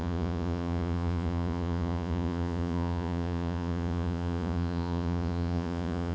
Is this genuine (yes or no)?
no